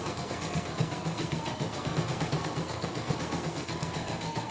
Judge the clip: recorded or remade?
remade